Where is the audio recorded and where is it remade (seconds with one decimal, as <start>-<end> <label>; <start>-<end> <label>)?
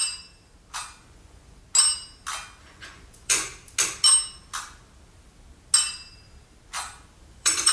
0.0-1.0 recorded; 1.0-1.6 remade; 1.6-2.6 recorded; 2.6-3.5 remade; 3.5-7.3 recorded; 7.3-7.7 remade